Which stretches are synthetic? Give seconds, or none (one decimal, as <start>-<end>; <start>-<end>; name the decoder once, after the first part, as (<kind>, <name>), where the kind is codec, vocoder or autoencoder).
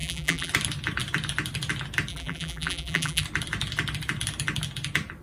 0.0-0.5 (vocoder, BigVGAN v2); 2.1-3.2